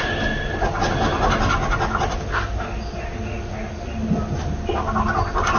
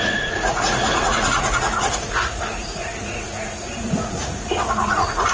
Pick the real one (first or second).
first